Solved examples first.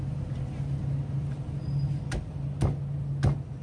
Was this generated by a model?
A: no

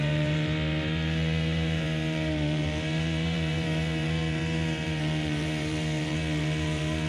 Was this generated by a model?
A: yes